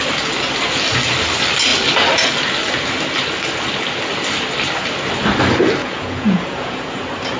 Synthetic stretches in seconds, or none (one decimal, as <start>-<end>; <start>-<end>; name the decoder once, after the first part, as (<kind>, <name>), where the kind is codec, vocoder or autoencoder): 5.8-7.0 (vocoder, Vocos)